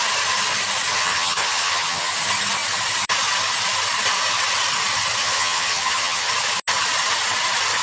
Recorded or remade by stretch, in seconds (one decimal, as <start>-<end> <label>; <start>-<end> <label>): 0.0-1.0 recorded; 1.0-2.1 remade; 2.1-5.2 recorded; 5.2-6.3 remade; 6.3-7.8 recorded